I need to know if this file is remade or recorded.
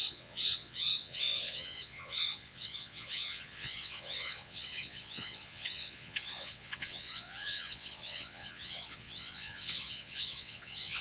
remade